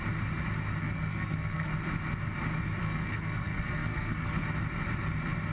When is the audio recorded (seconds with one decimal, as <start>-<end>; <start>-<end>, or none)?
0.0-0.8; 1.7-2.8; 4.4-5.5